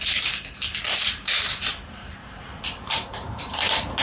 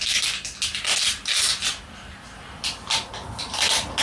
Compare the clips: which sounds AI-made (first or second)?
first